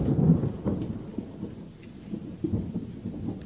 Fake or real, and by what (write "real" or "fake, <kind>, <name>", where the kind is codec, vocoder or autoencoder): real